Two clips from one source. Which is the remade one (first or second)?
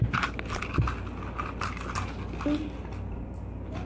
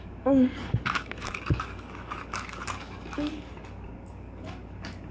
second